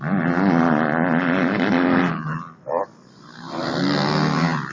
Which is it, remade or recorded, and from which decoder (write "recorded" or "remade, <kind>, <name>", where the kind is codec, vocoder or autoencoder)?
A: recorded